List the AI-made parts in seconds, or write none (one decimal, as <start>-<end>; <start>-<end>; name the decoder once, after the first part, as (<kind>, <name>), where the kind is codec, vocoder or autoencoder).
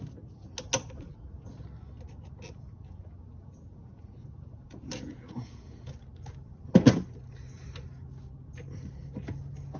3.4-5.9 (vocoder, Vocos)